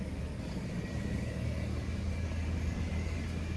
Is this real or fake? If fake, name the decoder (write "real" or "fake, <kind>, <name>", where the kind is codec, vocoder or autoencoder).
fake, codec, DAC